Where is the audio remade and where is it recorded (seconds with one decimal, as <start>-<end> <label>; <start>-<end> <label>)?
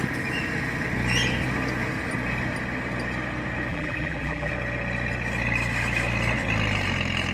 0.0-3.7 recorded; 3.7-4.5 remade; 4.5-7.3 recorded